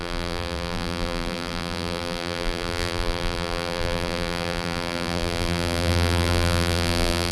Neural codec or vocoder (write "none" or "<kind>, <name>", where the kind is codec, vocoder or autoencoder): vocoder, BigVGAN v2